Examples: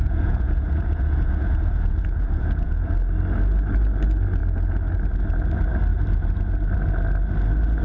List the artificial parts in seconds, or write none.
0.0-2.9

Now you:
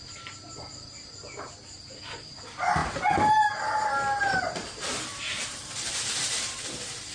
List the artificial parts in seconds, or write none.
5.1-6.0

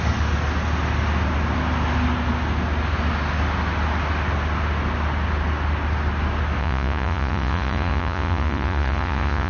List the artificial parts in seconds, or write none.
6.6-9.5

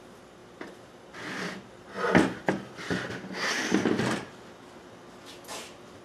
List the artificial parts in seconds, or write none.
none

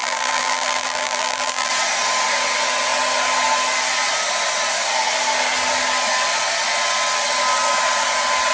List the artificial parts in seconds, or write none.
0.0-1.7

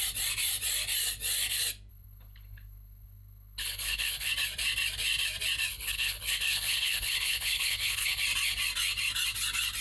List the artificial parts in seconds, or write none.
1.9-4.3; 5.7-8.2